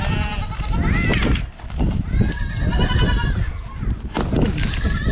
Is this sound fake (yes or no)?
no